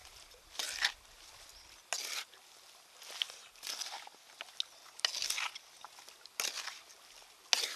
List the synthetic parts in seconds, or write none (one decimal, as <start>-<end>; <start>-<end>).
none